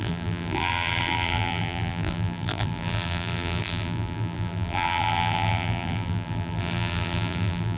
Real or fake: fake